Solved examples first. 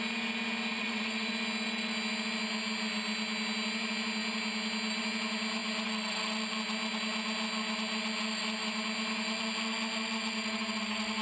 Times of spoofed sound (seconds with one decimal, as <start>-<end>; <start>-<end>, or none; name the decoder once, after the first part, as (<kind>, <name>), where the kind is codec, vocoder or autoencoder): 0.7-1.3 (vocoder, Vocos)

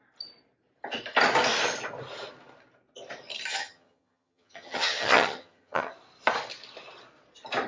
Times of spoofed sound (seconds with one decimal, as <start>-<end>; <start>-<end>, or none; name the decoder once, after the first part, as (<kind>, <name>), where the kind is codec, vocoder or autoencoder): 3.5-5.9 (vocoder, HiFi-GAN)

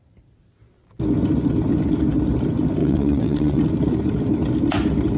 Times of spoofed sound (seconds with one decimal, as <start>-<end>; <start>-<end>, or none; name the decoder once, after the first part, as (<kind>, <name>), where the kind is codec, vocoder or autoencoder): 2.8-3.6 (vocoder, WaveNeXt)

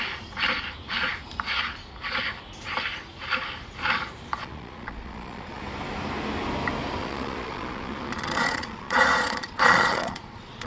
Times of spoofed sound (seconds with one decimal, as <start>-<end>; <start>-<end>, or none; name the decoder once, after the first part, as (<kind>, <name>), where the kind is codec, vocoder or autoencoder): 4.4-5.6 (vocoder, Vocos); 7.0-10.7

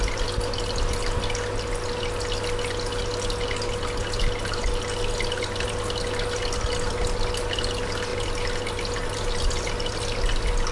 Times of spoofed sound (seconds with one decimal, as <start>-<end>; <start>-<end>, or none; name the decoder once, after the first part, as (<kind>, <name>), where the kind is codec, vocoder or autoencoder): none

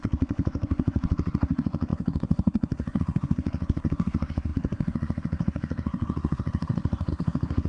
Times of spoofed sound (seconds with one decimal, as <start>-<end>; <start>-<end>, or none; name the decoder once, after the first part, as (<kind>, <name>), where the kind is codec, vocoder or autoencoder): 0.0-7.7 (codec, SNAC)